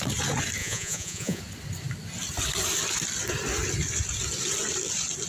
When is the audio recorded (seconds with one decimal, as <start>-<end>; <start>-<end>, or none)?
0.0-0.6; 1.4-5.3